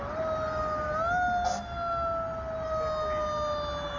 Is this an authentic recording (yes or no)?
yes